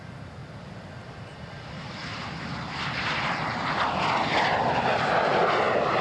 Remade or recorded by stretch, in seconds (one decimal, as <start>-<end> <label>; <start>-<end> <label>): 0.0-6.0 recorded